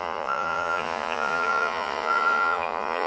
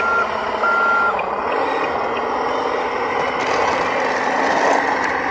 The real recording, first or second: second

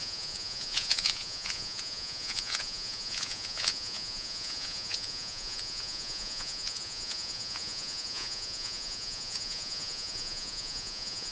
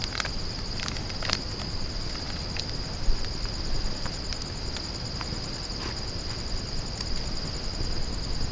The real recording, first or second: second